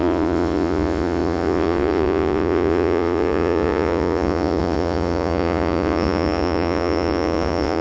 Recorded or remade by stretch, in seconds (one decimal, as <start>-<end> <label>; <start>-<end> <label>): 0.0-7.8 remade